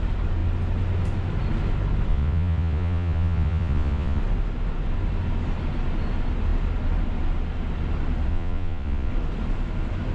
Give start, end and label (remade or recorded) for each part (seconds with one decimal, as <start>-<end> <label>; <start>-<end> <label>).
0.0-2.1 recorded; 2.1-4.2 remade; 4.2-8.3 recorded; 8.3-9.1 remade; 9.1-10.1 recorded